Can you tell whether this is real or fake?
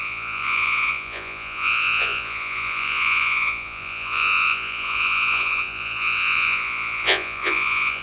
fake